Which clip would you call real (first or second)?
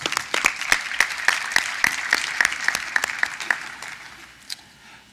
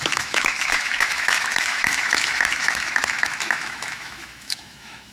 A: first